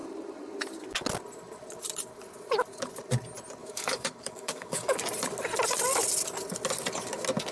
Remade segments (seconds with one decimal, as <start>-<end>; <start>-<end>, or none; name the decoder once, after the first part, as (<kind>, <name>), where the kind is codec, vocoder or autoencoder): 3.6-5.0 (codec, DAC)